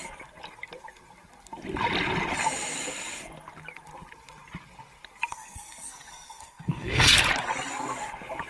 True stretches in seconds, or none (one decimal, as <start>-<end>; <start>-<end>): 0.0-5.3; 7.1-8.5